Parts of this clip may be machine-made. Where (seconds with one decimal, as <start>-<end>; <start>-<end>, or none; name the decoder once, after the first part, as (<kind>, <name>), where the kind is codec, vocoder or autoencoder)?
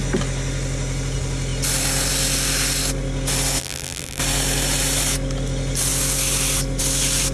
3.6-4.2 (vocoder, BigVGAN v2)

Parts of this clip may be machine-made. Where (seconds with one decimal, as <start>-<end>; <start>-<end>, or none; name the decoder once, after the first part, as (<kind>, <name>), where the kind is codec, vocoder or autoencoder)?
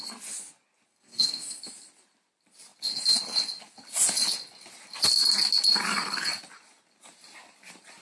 0.9-1.6 (codec, SNAC)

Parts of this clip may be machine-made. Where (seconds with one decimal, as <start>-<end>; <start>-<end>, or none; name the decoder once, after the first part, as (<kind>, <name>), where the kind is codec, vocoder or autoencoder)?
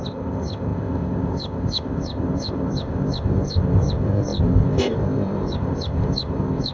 0.0-6.7 (codec, ZipCodec)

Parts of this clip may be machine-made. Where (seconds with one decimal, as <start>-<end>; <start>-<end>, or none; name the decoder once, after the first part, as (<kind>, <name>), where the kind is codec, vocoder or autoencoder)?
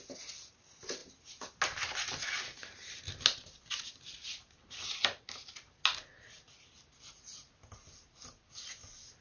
none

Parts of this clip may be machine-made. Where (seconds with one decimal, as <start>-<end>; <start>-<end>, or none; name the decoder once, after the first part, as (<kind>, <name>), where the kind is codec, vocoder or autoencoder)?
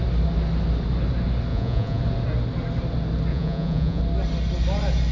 1.5-2.0 (vocoder, Vocos); 3.3-4.0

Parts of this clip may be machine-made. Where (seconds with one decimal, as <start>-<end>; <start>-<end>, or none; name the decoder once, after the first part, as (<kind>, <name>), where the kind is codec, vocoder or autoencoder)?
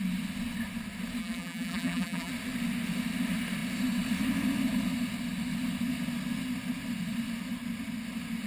1.2-2.3 (vocoder, BigVGAN v2)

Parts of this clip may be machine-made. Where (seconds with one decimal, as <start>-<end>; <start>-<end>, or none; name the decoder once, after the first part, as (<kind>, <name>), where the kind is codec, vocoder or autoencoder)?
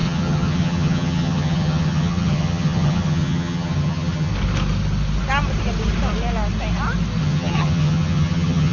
0.0-4.3 (vocoder, HiFi-GAN); 7.2-8.7